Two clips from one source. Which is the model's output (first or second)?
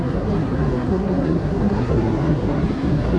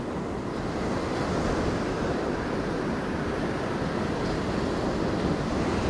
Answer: first